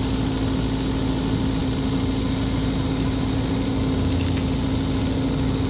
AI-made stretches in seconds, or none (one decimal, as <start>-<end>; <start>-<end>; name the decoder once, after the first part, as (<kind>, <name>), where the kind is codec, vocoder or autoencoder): none